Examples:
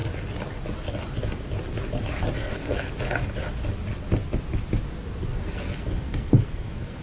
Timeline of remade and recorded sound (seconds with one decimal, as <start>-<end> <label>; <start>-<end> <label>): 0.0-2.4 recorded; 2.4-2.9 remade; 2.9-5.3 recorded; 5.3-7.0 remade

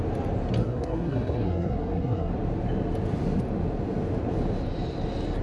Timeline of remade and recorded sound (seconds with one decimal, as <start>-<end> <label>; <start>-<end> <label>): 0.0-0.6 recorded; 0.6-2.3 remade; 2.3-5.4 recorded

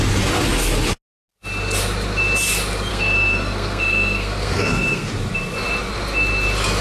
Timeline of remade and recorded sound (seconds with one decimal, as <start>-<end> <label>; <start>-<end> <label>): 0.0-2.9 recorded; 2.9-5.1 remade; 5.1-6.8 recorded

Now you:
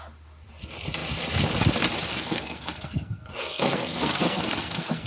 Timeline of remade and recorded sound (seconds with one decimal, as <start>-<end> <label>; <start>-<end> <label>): 0.0-2.1 recorded; 2.1-5.1 remade

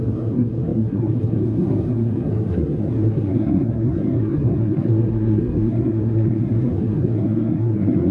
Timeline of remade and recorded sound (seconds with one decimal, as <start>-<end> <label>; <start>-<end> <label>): 0.0-8.1 remade